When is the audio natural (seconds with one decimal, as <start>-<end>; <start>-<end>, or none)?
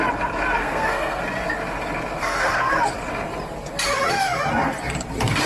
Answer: 0.0-0.6; 1.2-2.2; 2.7-5.5